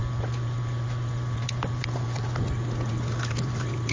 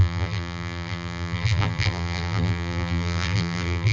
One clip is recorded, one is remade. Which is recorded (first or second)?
first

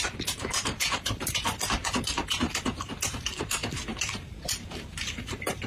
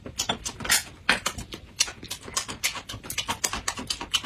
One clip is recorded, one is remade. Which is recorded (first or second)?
second